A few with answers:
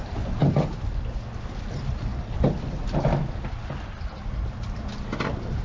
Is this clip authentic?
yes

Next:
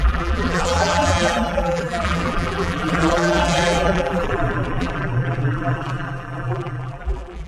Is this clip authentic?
no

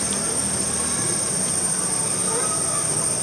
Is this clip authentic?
yes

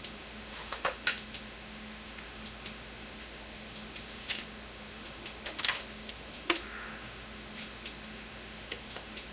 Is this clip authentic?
no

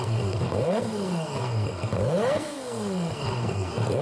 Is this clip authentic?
no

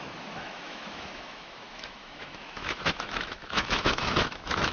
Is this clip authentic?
no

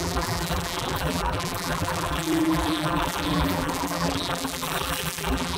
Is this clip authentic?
no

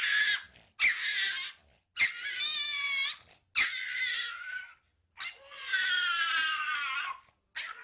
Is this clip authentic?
yes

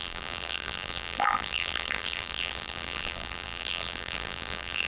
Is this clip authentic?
no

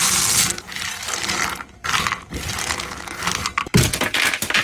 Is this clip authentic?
yes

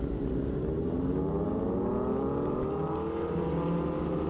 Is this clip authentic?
yes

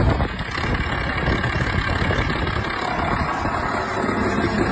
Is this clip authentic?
yes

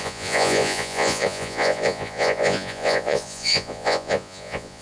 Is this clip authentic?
no